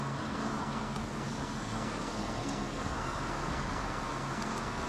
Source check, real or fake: fake